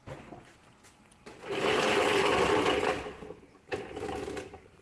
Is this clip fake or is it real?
real